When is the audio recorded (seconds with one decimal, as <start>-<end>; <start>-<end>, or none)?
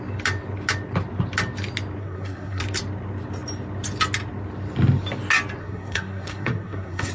0.0-2.0; 2.6-5.6